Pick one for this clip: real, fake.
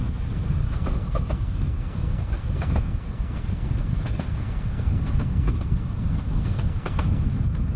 fake